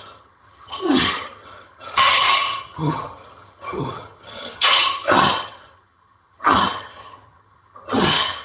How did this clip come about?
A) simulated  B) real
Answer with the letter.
A